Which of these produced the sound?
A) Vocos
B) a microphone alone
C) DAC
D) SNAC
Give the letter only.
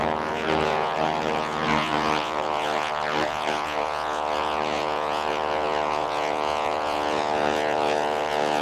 A